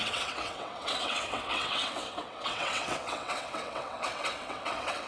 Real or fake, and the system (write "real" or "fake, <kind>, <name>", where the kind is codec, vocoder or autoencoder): fake, vocoder, WaveNeXt